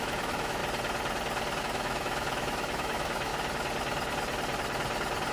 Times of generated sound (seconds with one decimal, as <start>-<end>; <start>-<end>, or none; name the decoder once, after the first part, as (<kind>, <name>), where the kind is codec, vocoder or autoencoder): 0.0-0.6 (autoencoder, DAC-VAE); 1.6-3.3